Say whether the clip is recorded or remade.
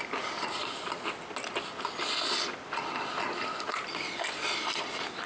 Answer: recorded